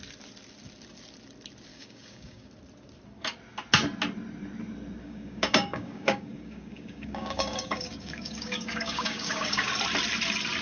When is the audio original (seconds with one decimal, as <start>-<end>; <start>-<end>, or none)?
0.0-1.7; 2.5-5.0; 9.7-10.6